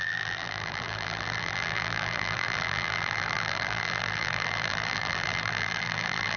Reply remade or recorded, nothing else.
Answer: remade